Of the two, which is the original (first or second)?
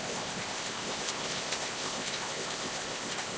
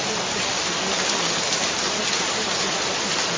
second